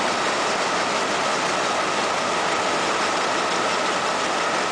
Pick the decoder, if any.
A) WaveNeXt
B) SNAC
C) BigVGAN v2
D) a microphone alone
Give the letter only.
D